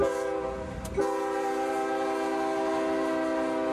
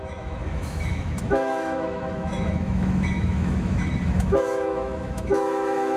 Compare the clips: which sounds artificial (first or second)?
second